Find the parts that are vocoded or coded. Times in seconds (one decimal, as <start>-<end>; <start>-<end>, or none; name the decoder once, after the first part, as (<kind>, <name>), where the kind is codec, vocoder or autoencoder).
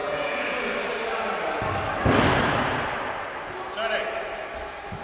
0.0-0.6 (vocoder, Vocos)